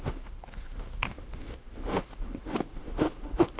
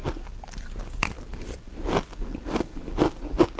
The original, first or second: second